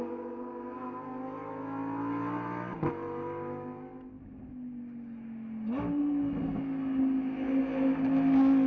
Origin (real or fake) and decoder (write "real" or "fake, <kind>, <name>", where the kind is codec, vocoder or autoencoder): real